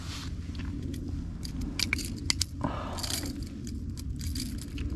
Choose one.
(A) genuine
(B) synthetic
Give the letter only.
A